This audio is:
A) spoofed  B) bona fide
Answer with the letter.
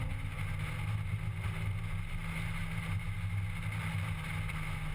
B